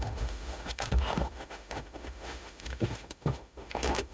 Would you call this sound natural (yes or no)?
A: no